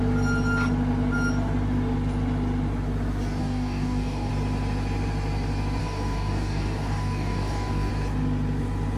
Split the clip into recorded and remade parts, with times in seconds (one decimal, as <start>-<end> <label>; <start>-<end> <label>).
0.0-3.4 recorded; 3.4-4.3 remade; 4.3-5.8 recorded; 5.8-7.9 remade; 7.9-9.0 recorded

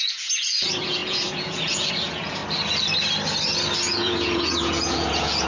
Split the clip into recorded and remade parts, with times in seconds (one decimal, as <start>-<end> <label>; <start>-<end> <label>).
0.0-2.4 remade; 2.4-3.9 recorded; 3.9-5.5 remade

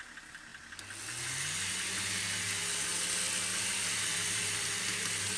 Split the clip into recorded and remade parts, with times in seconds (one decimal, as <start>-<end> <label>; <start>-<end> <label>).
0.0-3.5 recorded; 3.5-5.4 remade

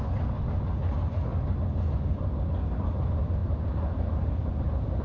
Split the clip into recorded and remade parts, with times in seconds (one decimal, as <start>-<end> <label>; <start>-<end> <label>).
0.0-5.0 recorded

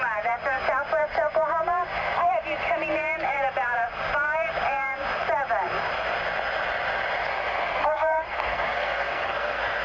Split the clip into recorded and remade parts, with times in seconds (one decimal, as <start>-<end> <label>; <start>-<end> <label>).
0.0-7.8 recorded; 7.8-9.8 remade